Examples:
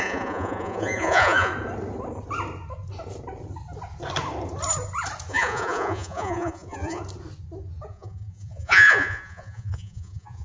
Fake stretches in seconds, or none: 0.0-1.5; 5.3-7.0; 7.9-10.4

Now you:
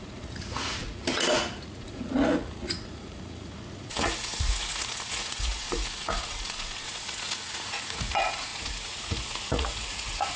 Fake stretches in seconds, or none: 0.0-10.4

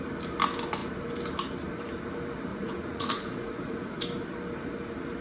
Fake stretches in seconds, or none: 2.5-4.0

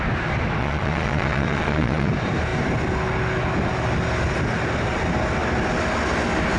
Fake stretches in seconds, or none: 0.6-2.1

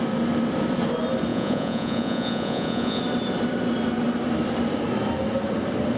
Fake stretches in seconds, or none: 1.3-3.0

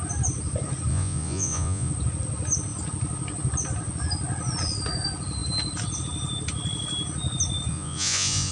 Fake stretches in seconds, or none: 0.9-1.9; 7.7-8.5

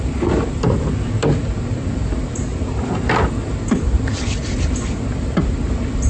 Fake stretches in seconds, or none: none